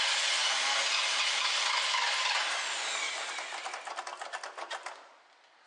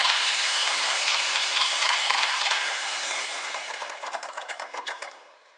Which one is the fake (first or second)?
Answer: second